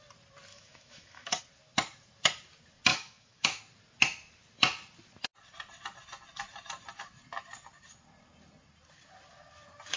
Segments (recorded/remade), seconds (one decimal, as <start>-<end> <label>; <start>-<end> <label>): 0.0-0.5 recorded; 0.5-1.4 remade; 1.4-2.9 recorded; 2.9-3.6 remade; 3.6-10.0 recorded